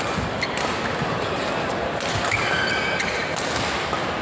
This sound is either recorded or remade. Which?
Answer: recorded